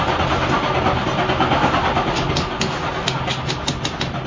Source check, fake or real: real